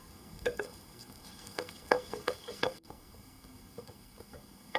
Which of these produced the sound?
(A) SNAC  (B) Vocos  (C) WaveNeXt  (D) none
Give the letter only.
A